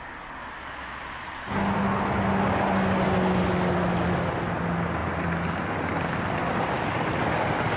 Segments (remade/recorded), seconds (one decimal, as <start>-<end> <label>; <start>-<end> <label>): 0.0-7.8 recorded